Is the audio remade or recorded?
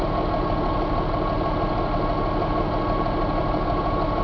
recorded